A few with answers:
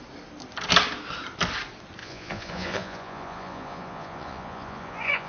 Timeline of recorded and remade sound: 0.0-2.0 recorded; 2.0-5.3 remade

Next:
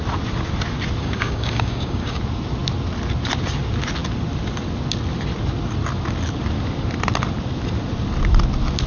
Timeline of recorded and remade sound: 0.0-1.0 recorded; 1.0-2.2 remade; 2.2-8.9 recorded